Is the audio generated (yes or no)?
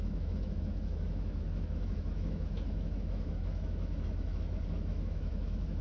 yes